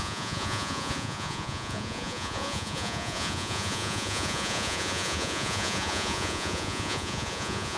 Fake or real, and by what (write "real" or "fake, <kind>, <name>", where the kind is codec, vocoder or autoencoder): fake, vocoder, Vocos